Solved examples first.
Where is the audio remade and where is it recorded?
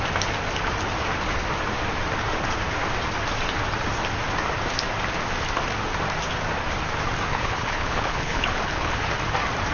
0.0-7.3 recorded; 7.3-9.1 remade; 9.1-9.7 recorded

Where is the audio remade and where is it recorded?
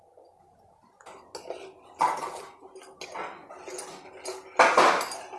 0.0-5.4 recorded